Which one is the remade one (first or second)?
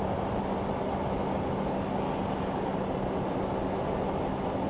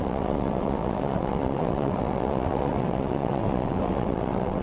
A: second